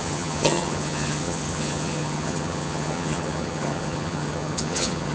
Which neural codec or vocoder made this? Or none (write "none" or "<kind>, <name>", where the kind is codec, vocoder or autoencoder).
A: vocoder, HiFi-GAN